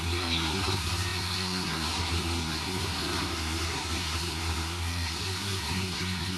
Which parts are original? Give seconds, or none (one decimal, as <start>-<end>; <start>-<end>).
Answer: none